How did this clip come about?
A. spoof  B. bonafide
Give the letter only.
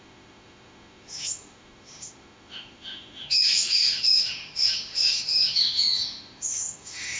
A